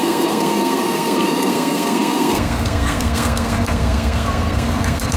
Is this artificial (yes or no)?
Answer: yes